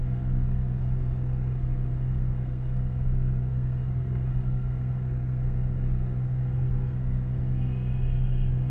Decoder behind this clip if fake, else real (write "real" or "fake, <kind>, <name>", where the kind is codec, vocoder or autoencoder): fake, codec, SNAC